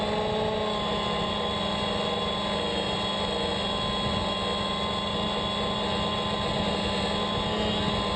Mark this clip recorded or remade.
recorded